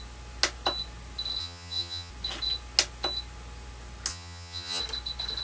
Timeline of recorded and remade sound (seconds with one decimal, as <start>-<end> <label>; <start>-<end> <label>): 0.0-1.4 recorded; 1.4-2.1 remade; 2.1-4.1 recorded; 4.1-4.8 remade; 4.8-5.4 recorded